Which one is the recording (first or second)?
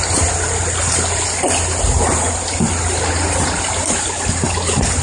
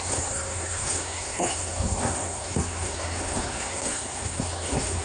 first